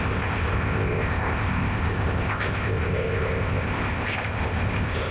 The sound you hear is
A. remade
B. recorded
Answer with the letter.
A